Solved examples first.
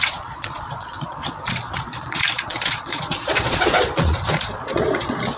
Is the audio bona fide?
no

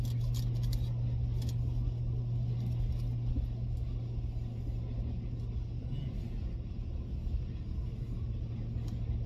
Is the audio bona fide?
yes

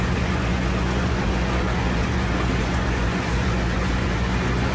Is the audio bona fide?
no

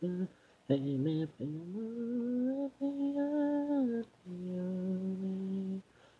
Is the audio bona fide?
yes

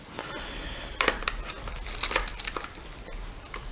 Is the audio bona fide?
yes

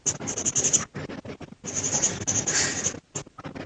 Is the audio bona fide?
yes